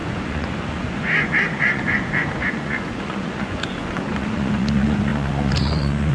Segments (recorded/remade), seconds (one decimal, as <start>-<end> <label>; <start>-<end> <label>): 0.0-6.1 remade